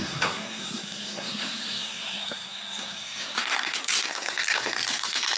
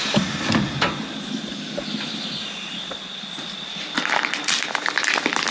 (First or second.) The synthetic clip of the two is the first